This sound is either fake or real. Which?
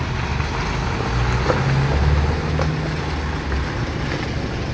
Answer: real